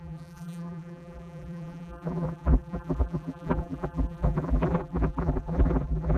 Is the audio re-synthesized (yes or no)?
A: yes